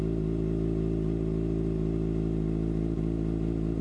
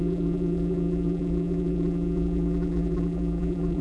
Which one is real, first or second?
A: first